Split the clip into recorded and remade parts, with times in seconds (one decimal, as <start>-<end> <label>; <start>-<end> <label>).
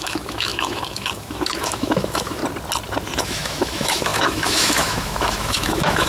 0.0-2.4 remade; 2.4-3.2 recorded; 3.2-6.1 remade